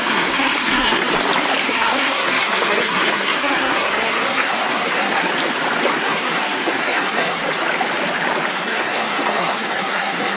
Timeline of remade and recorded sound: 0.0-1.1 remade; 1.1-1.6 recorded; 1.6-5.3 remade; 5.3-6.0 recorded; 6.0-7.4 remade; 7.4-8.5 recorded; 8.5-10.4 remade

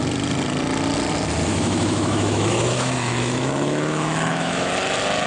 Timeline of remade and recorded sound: 0.0-1.5 recorded; 1.5-4.7 remade; 4.7-5.3 recorded

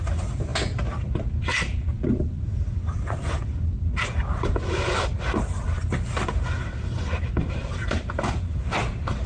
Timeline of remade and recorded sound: 0.0-9.3 recorded

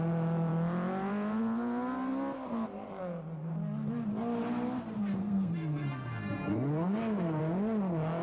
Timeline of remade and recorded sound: 0.0-5.2 recorded; 5.2-7.4 remade; 7.4-8.2 recorded

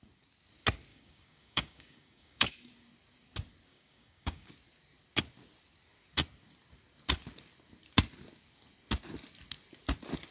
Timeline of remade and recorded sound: 0.0-0.9 recorded; 0.9-2.5 remade; 2.5-3.7 recorded; 3.7-4.5 remade; 4.5-10.3 recorded

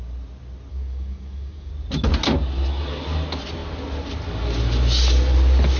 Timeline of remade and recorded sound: 0.0-0.7 recorded; 0.7-1.7 remade; 1.7-5.8 recorded

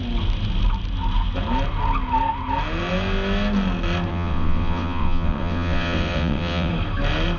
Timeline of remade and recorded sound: 0.0-4.1 recorded; 4.1-6.7 remade; 6.7-7.4 recorded

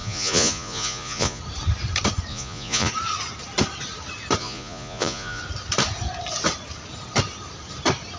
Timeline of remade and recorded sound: 0.0-1.4 remade; 1.4-2.3 recorded; 2.3-2.9 remade; 2.9-4.4 recorded; 4.4-5.4 remade; 5.4-8.2 recorded